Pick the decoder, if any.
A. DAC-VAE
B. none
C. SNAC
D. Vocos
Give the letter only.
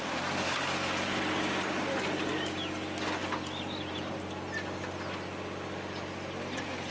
B